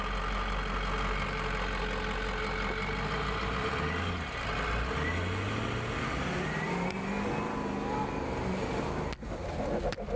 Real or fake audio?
real